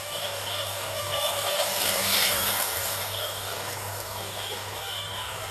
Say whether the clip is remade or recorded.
remade